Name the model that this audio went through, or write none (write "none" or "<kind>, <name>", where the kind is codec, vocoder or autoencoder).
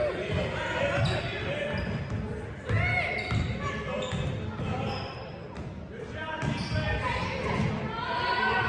none